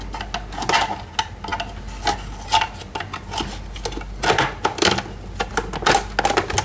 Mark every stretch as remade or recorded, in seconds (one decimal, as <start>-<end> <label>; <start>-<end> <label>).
0.0-6.6 recorded